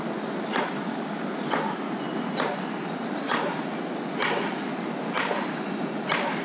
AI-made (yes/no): no